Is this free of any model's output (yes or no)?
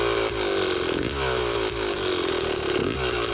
yes